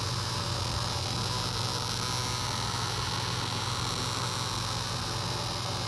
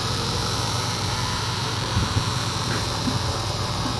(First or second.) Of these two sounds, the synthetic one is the second